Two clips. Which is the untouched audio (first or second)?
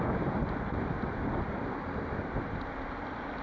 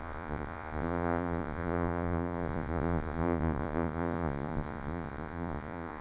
first